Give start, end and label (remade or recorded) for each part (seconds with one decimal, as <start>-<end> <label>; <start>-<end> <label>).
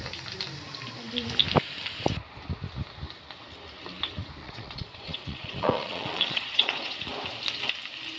0.0-4.4 recorded; 4.4-7.0 remade; 7.0-8.2 recorded